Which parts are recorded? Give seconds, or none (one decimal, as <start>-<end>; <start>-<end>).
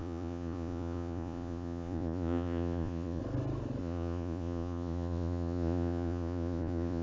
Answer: 3.2-3.8